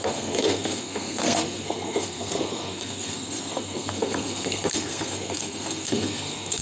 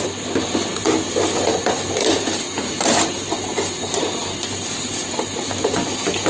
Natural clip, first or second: second